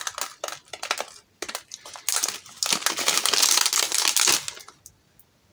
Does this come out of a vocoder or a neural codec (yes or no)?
no